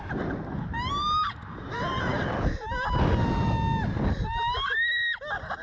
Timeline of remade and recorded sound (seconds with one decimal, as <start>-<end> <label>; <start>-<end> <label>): 0.0-5.6 recorded